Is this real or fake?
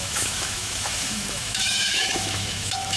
fake